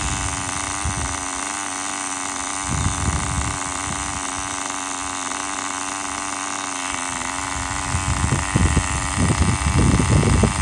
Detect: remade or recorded recorded